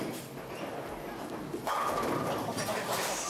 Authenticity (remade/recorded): recorded